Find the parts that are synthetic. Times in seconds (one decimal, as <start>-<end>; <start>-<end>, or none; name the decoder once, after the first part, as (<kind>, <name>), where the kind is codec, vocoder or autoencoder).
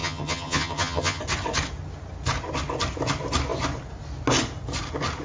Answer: 0.0-1.2 (vocoder, HiFi-GAN)